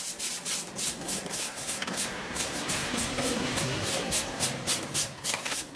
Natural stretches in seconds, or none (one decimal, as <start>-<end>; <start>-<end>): 0.0-0.9; 4.4-5.0